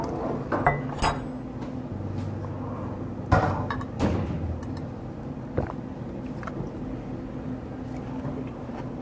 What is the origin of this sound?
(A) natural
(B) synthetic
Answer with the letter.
A